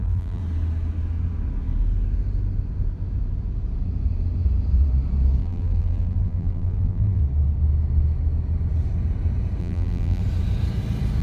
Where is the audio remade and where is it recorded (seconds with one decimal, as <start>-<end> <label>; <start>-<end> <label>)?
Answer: 0.0-0.4 remade; 0.4-5.4 recorded; 5.4-7.2 remade; 7.2-9.6 recorded; 9.6-10.2 remade; 10.2-11.2 recorded